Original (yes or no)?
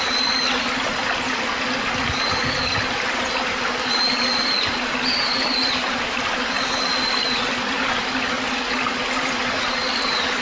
yes